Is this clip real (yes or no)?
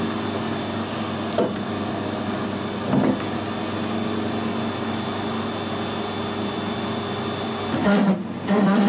yes